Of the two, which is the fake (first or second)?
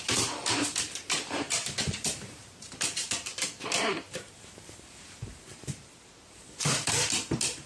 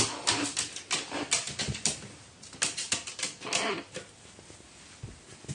first